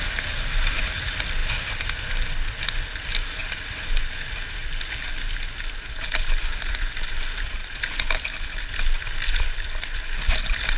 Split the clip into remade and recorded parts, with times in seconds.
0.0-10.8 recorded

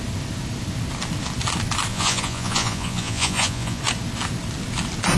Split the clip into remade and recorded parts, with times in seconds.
0.0-1.9 recorded; 1.9-3.8 remade; 3.8-5.2 recorded

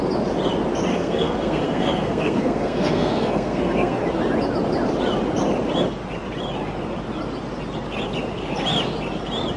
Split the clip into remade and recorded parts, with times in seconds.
0.0-0.9 recorded; 0.9-4.0 remade; 4.0-9.6 recorded

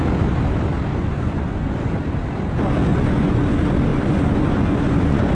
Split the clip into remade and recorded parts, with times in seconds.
0.0-0.9 recorded; 0.9-1.9 remade; 1.9-2.9 recorded; 2.9-3.5 remade; 3.5-3.9 recorded; 3.9-5.3 remade

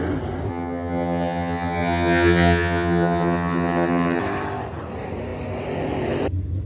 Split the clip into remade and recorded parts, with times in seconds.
0.0-0.5 recorded; 0.5-4.2 remade; 4.2-6.7 recorded